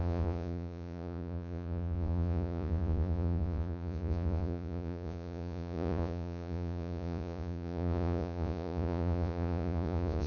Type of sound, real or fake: fake